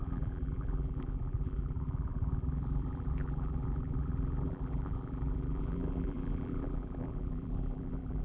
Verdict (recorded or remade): remade